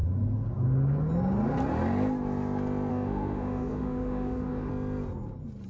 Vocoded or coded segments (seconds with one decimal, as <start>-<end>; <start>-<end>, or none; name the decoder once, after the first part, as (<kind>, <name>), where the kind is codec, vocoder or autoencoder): 2.9-4.7 (autoencoder, DAC-VAE)

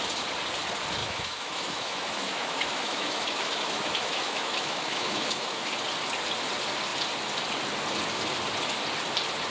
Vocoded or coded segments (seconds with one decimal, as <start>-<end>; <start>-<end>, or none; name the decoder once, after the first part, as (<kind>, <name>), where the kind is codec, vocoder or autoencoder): 1.0-5.7 (autoencoder, DAC-VAE)

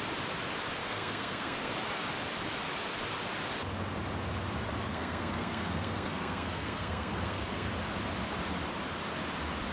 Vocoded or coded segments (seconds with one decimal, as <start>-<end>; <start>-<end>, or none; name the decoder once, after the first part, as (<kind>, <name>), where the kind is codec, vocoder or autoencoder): 0.8-1.7 (codec, SNAC); 4.9-7.7

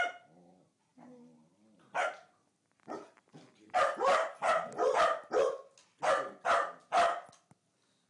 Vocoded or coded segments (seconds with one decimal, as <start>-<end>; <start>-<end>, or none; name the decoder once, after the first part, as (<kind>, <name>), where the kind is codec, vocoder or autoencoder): none

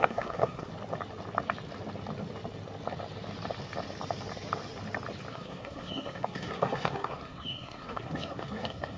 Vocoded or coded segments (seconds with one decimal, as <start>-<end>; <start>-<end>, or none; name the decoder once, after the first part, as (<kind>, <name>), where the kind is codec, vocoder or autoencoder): 0.0-0.7 (codec, SNAC); 5.3-9.0

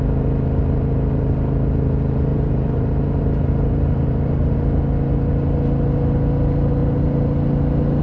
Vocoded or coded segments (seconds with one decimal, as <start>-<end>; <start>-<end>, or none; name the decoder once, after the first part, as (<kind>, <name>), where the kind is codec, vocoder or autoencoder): 2.3-4.3 (vocoder, BigVGAN v2)

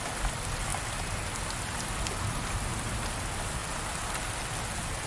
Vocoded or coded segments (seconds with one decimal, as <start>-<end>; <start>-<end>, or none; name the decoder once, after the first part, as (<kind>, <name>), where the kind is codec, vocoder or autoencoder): none